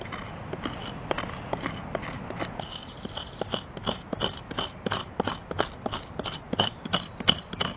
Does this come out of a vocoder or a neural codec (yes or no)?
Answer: no